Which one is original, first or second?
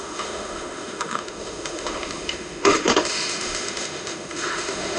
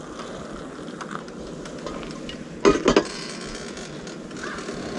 second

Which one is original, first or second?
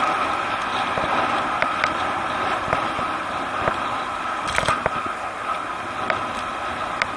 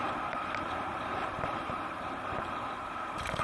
first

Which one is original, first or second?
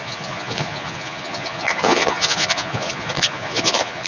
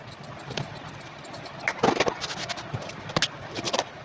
second